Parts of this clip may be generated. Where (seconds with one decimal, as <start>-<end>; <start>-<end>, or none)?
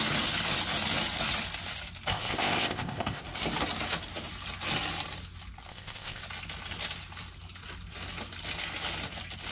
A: 2.1-3.2; 5.7-6.2